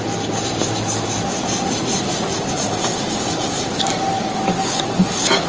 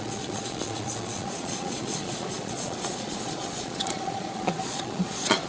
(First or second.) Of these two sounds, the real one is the first